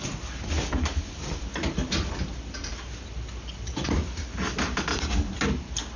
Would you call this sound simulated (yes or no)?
no